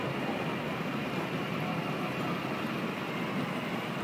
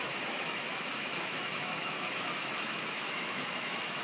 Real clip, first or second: first